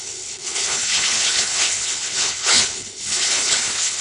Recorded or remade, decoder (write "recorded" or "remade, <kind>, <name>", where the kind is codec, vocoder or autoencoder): remade, codec, HILCodec